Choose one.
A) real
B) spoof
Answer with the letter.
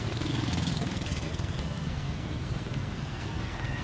B